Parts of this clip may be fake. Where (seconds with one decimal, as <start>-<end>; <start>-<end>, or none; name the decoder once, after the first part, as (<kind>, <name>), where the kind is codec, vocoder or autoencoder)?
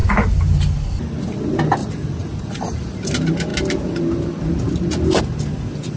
1.8-2.6 (vocoder, Vocos)